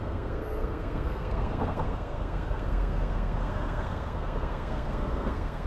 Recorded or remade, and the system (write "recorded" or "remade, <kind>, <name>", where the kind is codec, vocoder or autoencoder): remade, codec, SNAC